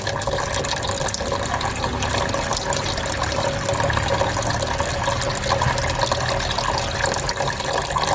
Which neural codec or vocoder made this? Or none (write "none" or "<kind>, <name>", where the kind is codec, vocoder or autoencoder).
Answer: none